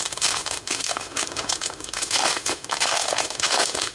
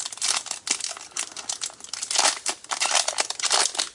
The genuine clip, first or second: second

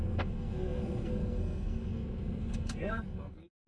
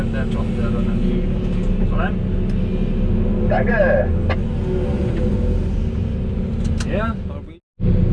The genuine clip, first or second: second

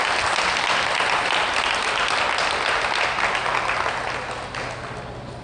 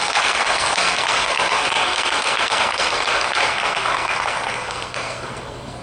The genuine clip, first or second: first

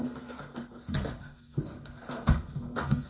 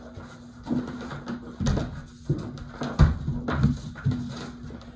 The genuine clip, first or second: second